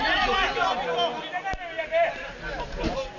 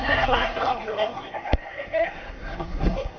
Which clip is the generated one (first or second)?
second